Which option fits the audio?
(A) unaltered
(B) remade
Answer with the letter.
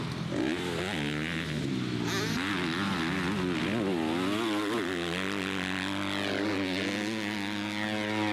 A